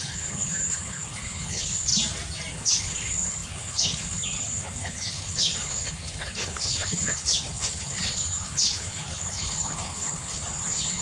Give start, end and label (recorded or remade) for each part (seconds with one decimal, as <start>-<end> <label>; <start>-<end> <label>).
0.0-1.9 remade; 1.9-2.5 recorded; 2.5-11.0 remade